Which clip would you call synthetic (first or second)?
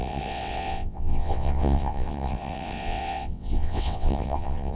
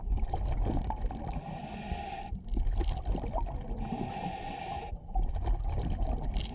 first